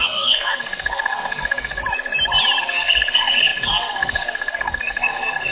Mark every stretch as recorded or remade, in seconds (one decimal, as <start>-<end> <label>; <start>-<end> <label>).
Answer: 0.0-1.8 remade; 1.8-2.6 recorded; 2.6-5.5 remade